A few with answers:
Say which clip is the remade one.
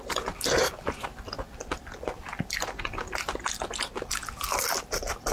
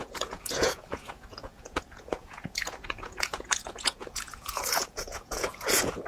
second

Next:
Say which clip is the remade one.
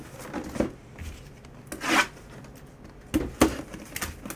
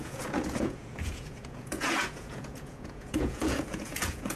second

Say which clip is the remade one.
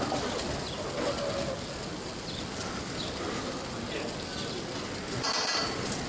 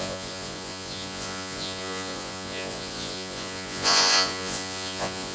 second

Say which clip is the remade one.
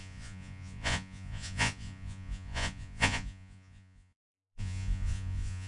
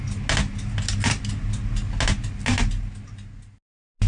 first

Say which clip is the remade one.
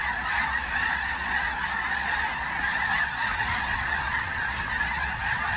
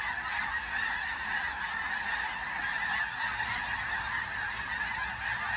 first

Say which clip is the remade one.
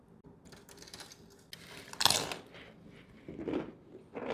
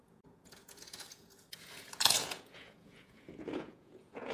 second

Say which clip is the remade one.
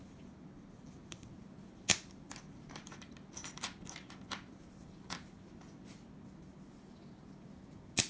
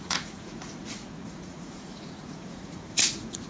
second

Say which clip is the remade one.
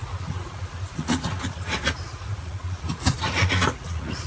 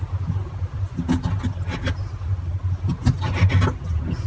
first